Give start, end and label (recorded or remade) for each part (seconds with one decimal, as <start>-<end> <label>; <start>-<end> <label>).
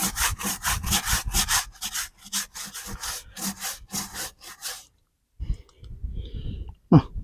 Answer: 0.0-1.6 remade; 1.6-4.6 recorded; 4.6-5.6 remade; 5.6-7.2 recorded